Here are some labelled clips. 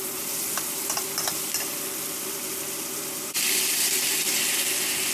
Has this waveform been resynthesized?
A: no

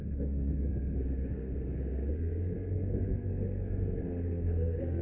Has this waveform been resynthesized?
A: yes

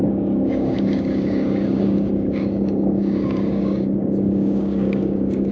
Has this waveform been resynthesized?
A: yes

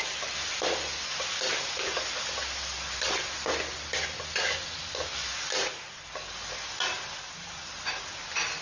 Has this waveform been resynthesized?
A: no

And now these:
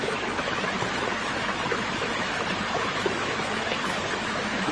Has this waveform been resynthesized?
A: yes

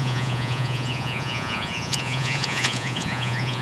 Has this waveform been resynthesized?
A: yes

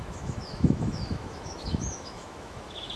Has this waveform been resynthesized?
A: yes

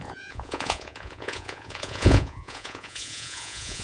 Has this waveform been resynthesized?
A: yes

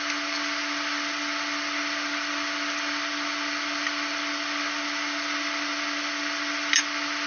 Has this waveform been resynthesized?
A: no